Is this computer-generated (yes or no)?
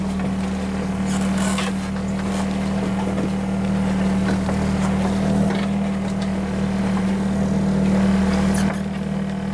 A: no